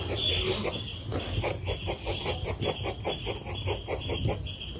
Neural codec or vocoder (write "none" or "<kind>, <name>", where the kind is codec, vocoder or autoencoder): none